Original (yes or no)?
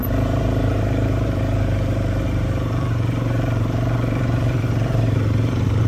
no